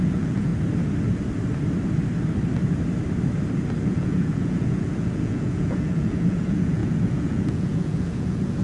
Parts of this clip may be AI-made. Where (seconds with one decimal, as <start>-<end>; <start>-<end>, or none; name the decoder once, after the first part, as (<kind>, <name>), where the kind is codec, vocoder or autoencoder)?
0.0-0.5 (vocoder, Vocos); 3.8-8.6